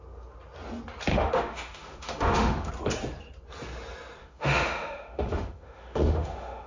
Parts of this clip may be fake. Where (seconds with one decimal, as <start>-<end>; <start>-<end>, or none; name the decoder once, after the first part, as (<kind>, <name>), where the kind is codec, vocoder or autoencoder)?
1.1-2.7 (autoencoder, DAC-VAE); 4.2-6.7